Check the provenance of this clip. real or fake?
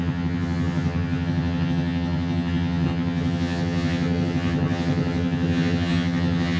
fake